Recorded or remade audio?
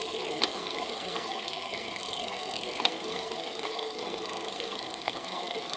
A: remade